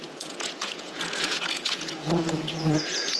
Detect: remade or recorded remade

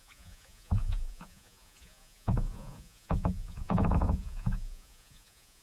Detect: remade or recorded remade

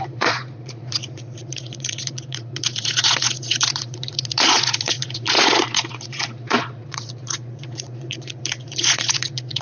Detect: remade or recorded remade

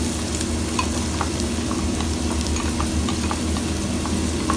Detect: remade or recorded recorded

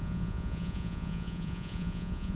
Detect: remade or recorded remade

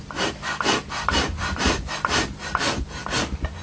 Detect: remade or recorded recorded